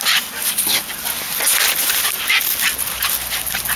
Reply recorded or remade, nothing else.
recorded